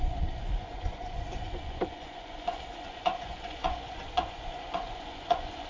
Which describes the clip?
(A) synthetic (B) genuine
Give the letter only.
A